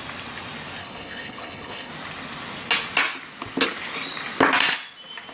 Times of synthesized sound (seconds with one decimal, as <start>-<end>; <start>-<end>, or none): 0.8-1.9